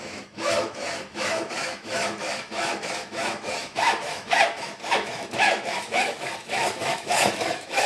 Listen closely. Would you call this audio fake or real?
fake